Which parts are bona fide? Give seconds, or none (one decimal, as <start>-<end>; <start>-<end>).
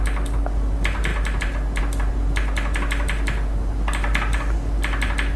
0.0-5.4